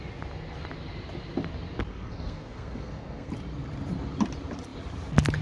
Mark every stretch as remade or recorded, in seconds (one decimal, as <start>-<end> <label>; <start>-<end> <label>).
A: 0.0-1.9 recorded; 1.9-3.3 remade; 3.3-5.4 recorded